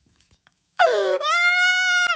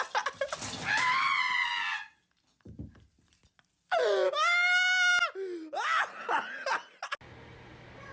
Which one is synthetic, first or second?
first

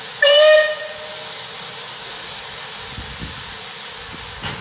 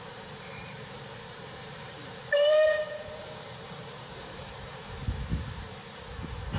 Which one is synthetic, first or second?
second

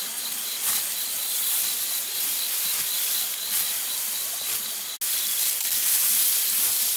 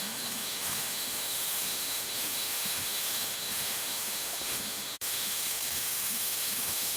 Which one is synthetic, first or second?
second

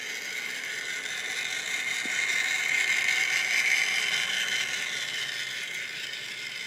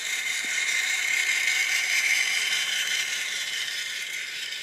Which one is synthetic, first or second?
second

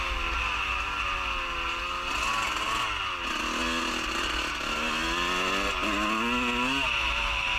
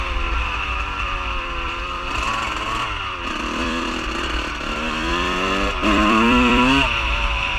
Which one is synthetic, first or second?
second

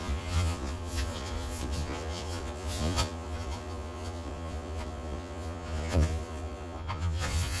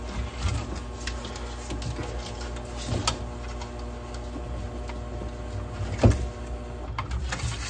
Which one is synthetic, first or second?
first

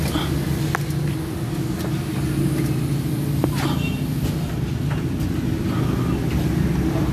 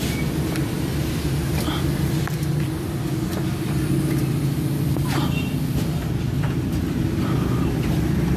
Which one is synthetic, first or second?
second